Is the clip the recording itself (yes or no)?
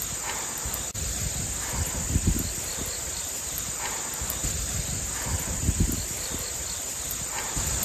yes